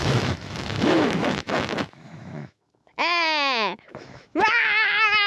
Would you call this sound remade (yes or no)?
yes